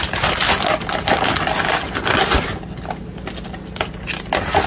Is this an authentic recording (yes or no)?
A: yes